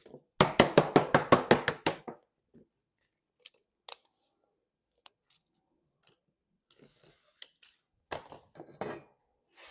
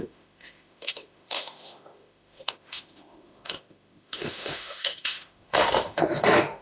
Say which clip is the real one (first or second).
first